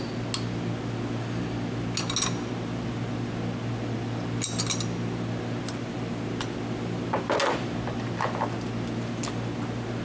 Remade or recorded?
recorded